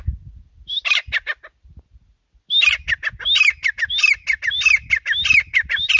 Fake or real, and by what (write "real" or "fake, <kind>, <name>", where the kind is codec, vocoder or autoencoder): real